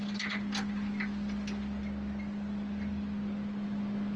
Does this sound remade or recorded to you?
recorded